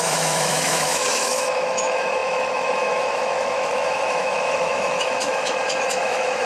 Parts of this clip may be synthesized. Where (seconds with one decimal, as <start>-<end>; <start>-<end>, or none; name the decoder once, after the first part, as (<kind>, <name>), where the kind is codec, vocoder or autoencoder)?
0.0-6.5 (autoencoder, DAC-VAE)